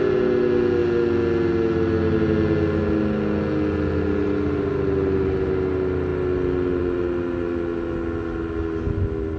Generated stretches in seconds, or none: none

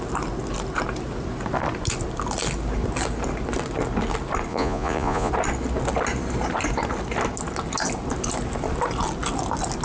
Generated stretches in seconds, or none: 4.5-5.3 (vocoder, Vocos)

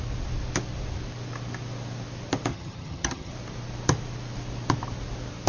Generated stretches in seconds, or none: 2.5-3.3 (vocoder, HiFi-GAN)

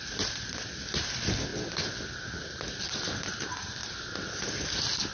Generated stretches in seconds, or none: none

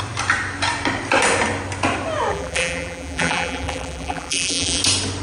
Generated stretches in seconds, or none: 2.3-4.8 (vocoder, BigVGAN v2)

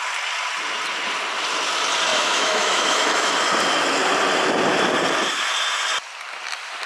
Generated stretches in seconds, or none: 2.1-3.3 (autoencoder, DAC-VAE)

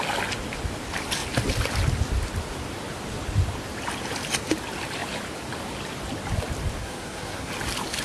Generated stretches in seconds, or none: 6.8-7.5 (codec, SNAC)

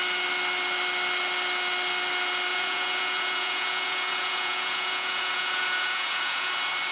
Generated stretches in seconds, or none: 2.5-6.5 (vocoder, Vocos)